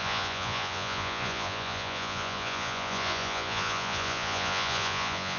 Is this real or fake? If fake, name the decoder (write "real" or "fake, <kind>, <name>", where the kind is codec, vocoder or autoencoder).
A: fake, vocoder, Vocos